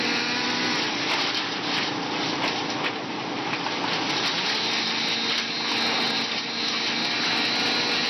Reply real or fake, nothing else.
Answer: real